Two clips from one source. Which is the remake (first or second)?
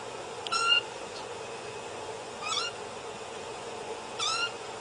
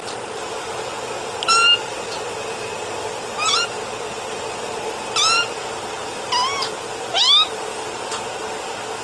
first